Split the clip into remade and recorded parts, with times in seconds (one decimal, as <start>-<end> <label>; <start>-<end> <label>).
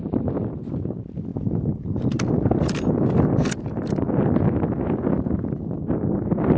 0.0-6.6 recorded